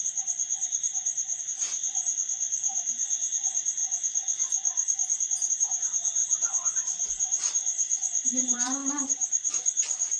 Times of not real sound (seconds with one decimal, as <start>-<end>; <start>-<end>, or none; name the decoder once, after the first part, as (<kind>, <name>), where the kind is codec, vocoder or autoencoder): 0.0-3.8 (vocoder, BigVGAN v2); 5.5-10.2